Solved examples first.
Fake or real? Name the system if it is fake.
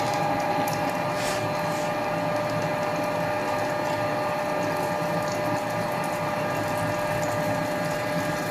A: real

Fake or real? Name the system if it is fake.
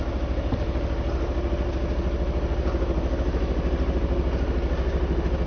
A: real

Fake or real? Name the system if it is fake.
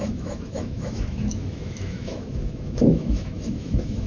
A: fake, autoencoder, DAC-VAE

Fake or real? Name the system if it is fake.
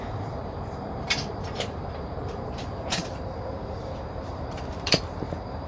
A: fake, vocoder, BigVGAN v2